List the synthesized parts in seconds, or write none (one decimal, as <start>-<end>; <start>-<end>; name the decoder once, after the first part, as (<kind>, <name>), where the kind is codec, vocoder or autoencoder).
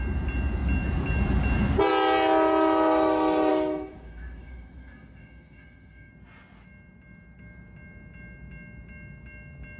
3.5-6.1 (autoencoder, DAC-VAE)